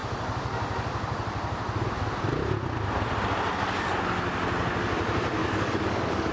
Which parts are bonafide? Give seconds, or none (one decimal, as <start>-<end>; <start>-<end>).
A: 0.0-5.4

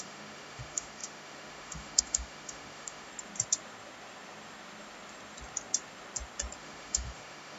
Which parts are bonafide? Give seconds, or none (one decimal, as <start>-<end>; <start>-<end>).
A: 3.1-6.6

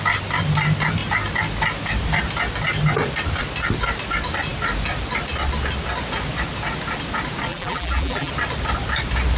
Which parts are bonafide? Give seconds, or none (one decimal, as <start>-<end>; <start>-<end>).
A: 0.0-7.5; 8.3-9.4

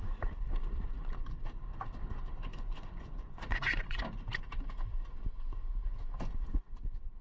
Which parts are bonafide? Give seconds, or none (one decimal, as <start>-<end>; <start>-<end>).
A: 0.0-2.5; 4.0-7.2

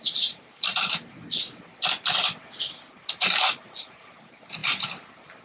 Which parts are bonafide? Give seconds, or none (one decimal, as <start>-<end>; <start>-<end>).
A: 1.2-3.1

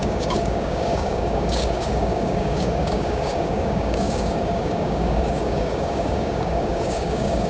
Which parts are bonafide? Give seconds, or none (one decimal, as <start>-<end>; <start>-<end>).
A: none

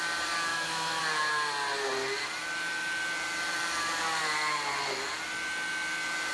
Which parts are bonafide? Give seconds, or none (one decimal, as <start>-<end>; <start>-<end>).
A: 0.0-0.5; 1.0-6.3